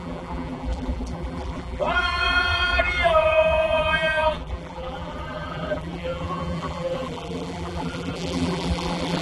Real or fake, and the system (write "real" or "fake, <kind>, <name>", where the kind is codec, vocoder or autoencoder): fake, vocoder, BigVGAN v2